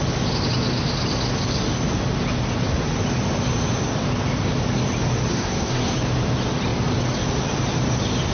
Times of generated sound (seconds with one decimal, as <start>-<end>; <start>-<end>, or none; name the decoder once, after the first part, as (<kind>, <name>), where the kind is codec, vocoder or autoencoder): 5.3-5.9 (codec, SNAC)